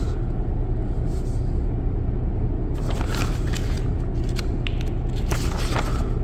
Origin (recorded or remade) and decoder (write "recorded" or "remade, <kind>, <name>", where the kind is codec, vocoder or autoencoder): recorded